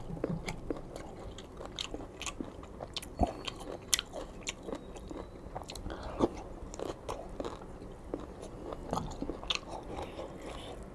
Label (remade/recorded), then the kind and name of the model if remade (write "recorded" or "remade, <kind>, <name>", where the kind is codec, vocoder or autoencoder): recorded